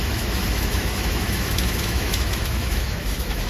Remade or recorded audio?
remade